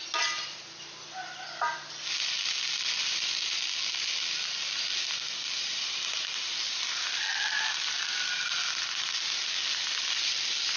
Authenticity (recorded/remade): recorded